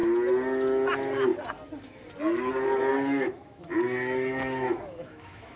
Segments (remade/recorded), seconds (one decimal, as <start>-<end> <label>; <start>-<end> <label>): 0.0-2.9 recorded; 2.9-5.6 remade